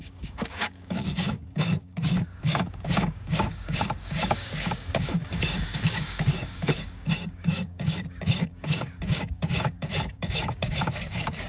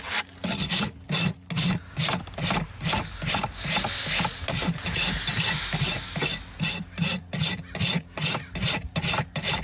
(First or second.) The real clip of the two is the second